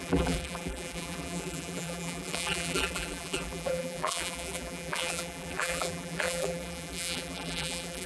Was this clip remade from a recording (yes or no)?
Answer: yes